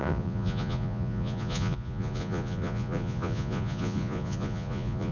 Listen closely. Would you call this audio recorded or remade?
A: remade